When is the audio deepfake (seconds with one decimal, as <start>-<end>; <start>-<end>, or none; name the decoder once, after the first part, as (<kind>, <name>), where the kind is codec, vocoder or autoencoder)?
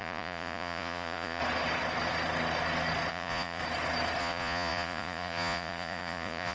0.0-1.4 (vocoder, Vocos); 3.1-3.6; 4.2-6.5